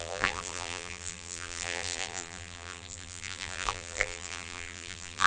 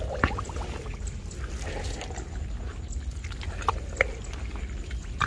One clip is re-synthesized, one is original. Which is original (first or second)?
second